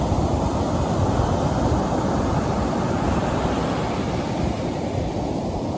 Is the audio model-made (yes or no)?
no